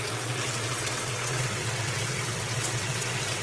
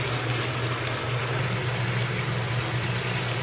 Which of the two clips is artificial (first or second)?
first